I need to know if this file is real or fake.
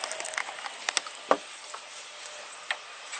real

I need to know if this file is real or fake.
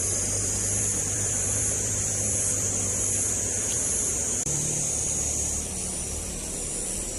fake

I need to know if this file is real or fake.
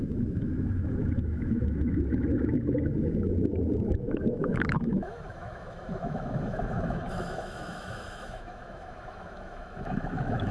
fake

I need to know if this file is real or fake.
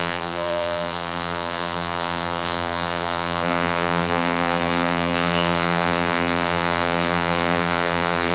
fake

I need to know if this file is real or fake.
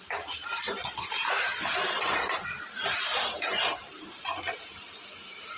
fake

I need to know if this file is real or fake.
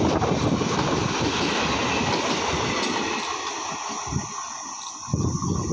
real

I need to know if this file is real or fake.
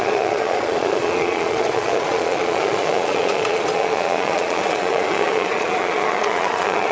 fake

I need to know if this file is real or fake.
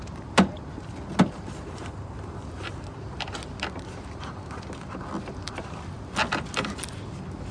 real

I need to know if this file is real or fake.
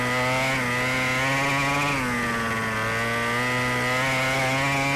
real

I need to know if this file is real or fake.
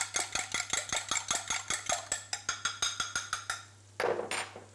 real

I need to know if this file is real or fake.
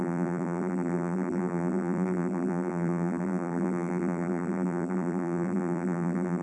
fake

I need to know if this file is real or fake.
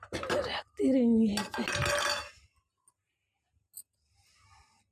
real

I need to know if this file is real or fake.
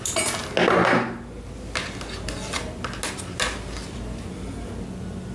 real